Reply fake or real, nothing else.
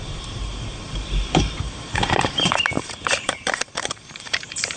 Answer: fake